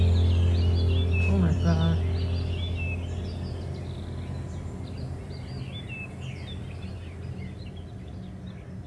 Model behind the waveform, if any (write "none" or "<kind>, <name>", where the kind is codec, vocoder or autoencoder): none